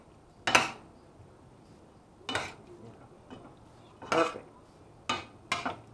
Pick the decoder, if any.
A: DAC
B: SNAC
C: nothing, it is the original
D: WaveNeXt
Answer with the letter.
C